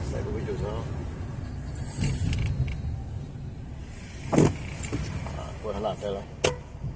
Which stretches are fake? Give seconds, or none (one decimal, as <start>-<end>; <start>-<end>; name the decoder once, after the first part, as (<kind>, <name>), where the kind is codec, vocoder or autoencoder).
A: none